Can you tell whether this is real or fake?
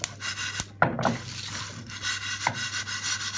real